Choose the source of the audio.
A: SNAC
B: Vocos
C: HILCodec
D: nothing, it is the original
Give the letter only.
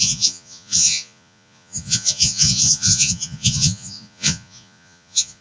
B